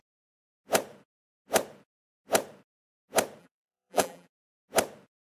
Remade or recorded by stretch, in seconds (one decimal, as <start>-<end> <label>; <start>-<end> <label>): 0.0-3.4 recorded; 3.4-4.3 remade; 4.3-5.3 recorded